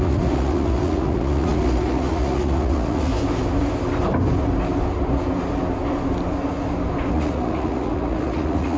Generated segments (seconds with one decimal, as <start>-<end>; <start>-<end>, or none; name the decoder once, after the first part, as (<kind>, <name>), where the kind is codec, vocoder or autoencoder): 0.0-3.1 (vocoder, Vocos); 7.1-8.8